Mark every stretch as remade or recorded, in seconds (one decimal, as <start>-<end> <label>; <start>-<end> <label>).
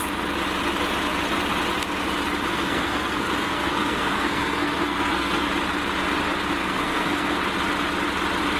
0.0-2.5 recorded; 2.5-5.5 remade; 5.5-6.6 recorded; 6.6-7.4 remade; 7.4-8.6 recorded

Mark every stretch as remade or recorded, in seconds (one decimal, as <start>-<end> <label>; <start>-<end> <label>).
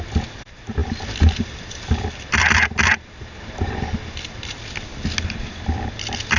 0.0-6.4 recorded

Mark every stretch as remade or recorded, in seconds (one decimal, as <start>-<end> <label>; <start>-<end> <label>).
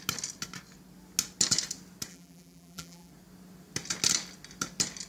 0.0-2.1 recorded; 2.1-3.1 remade; 3.1-5.1 recorded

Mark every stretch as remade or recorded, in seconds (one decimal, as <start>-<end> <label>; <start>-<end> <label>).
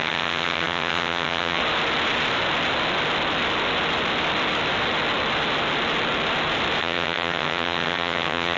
0.0-1.6 remade; 1.6-6.8 recorded; 6.8-8.6 remade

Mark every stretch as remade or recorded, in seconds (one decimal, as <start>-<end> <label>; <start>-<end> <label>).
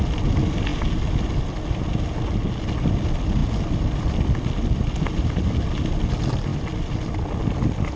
0.0-8.0 recorded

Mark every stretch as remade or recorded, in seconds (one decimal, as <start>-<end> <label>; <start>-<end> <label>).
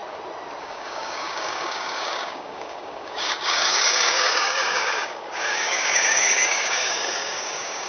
0.0-0.6 recorded; 0.6-7.9 remade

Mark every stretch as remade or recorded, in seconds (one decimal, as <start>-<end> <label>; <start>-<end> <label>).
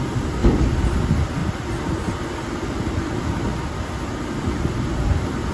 0.0-0.4 recorded; 0.4-0.9 remade; 0.9-5.5 recorded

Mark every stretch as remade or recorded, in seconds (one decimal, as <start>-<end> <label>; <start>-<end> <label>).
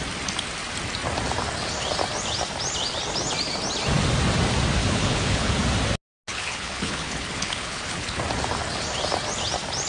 0.0-4.8 recorded; 4.8-5.5 remade; 5.5-6.3 recorded; 6.3-8.2 remade; 8.2-9.9 recorded